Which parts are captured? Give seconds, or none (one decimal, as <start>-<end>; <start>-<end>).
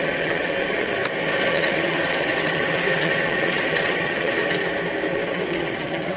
1.0-1.5; 4.4-5.1